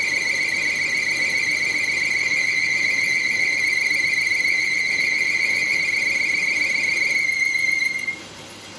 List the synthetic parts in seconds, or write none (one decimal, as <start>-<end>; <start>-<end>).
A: 2.2-3.6; 4.5-5.8